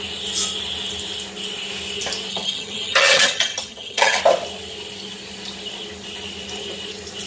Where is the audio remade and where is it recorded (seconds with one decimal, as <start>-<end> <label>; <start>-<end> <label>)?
0.0-2.3 recorded; 2.3-4.2 remade; 4.2-7.3 recorded